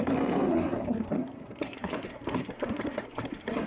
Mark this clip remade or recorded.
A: remade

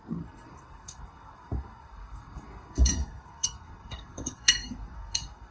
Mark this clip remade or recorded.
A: remade